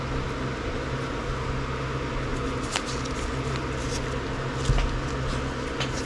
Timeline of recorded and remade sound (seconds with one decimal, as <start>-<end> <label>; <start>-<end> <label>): 0.0-6.1 recorded

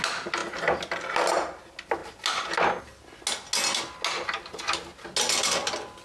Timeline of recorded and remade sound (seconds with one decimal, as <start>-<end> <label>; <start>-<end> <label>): 0.0-6.0 recorded

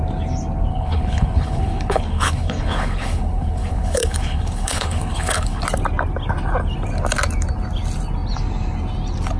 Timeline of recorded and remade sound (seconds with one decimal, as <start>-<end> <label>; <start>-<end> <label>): 0.0-0.7 recorded; 0.7-5.6 remade; 5.6-9.4 recorded

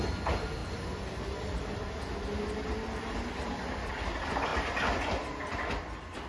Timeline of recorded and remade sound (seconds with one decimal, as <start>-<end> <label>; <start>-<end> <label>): 0.0-6.3 recorded

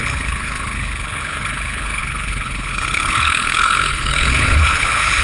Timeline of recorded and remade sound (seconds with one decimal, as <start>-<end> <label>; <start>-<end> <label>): 0.0-5.2 remade